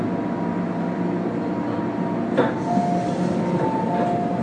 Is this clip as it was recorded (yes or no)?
yes